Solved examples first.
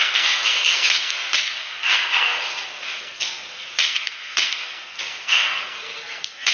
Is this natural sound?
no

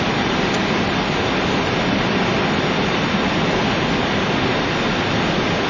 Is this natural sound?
yes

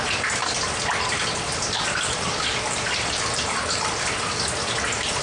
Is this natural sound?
yes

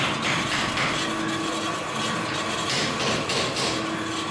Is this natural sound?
yes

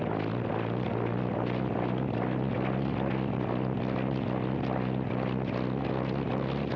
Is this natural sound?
yes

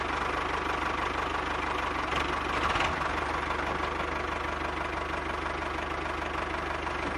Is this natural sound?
yes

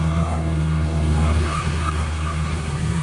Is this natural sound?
no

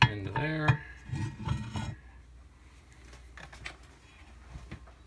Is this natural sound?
yes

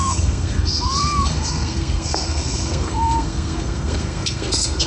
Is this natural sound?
no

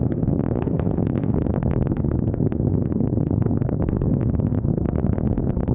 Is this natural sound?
no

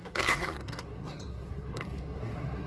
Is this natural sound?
no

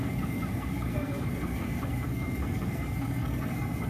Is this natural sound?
no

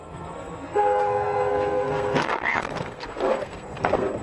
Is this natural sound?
no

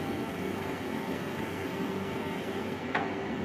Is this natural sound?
no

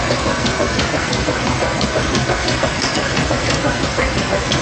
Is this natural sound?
no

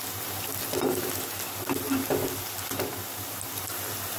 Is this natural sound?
yes